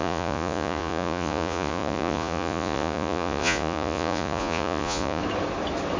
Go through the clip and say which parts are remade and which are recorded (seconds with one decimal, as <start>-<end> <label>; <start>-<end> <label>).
0.0-5.2 remade; 5.2-6.0 recorded